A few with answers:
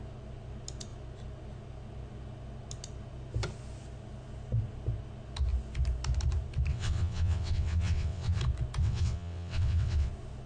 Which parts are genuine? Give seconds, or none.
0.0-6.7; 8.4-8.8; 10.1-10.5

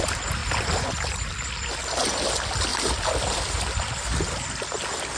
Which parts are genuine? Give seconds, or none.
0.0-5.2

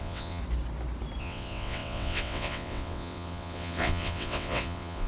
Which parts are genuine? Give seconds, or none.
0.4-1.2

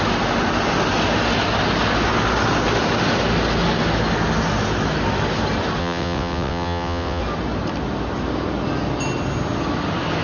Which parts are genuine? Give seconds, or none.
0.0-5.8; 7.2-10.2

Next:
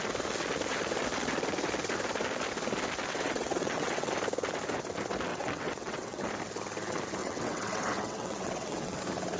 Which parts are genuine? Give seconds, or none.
0.0-3.1; 4.1-5.3; 6.2-7.2; 9.0-9.4

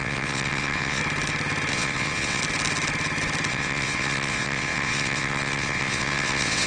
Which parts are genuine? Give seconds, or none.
1.0-1.7; 2.4-3.5

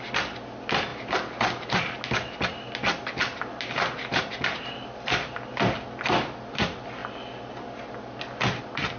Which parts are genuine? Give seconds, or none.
0.0-9.0

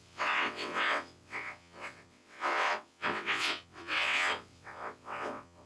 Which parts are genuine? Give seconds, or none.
none